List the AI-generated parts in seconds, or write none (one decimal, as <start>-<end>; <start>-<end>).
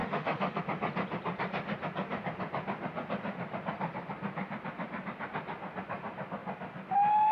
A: 0.0-0.6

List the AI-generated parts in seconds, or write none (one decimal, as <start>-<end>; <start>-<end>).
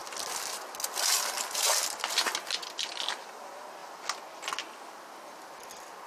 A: none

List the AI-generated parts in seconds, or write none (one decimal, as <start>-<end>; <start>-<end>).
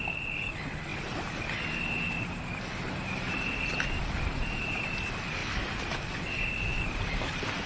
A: none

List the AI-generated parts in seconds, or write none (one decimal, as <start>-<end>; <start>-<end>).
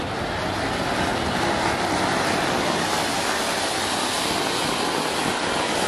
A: 0.0-1.1; 4.6-5.9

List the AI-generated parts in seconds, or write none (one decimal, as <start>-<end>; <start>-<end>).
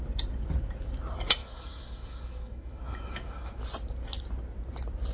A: 1.4-3.6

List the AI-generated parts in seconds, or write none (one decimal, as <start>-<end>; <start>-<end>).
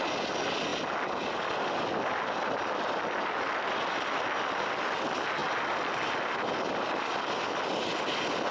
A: none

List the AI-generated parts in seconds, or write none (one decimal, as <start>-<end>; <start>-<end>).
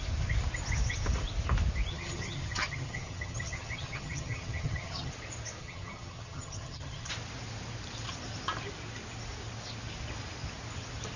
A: 1.9-5.1; 5.6-7.1